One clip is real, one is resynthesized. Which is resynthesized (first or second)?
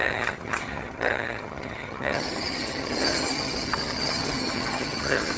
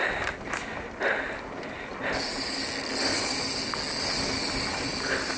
first